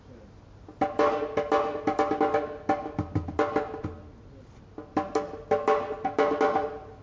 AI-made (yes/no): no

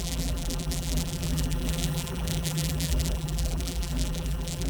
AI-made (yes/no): yes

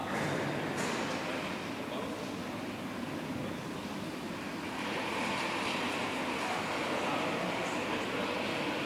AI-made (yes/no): no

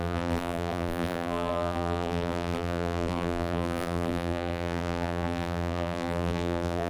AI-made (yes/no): yes